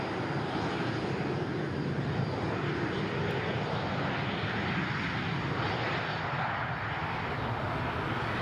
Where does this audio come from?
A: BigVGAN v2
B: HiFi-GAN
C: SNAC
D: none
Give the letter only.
D